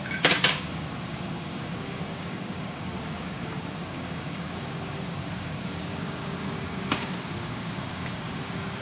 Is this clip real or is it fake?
fake